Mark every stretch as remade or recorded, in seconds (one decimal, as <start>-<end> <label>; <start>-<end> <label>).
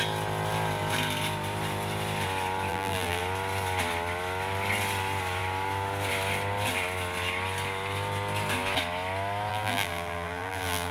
0.0-2.7 recorded; 2.7-3.2 remade; 3.2-9.5 recorded; 9.5-10.9 remade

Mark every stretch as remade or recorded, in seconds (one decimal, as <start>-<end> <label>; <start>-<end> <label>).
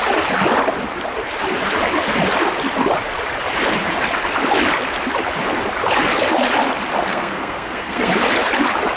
0.0-7.1 recorded; 7.1-8.1 remade; 8.1-9.0 recorded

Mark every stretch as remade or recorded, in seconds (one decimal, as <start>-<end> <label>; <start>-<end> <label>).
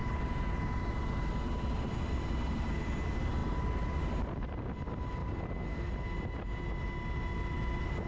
0.0-8.1 recorded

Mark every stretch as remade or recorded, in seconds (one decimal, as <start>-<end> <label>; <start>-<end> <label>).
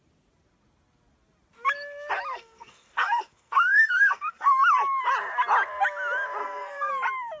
0.0-2.3 recorded; 2.3-4.6 remade; 4.6-6.4 recorded; 6.4-6.9 remade; 6.9-7.4 recorded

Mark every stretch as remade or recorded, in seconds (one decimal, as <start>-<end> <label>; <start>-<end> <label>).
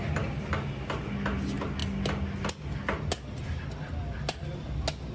0.0-5.1 recorded